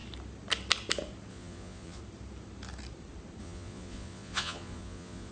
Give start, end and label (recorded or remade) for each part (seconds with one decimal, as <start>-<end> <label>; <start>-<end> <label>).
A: 0.0-1.3 recorded; 1.3-2.0 remade; 2.0-3.4 recorded; 3.4-5.3 remade